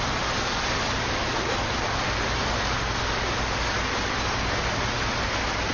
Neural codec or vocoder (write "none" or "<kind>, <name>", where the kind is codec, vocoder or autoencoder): none